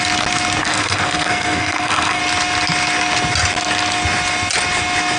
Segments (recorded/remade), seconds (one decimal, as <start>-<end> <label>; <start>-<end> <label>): 0.0-0.6 recorded; 0.6-2.2 remade; 2.2-5.2 recorded